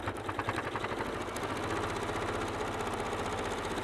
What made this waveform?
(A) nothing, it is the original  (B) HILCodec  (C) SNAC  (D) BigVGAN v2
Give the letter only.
A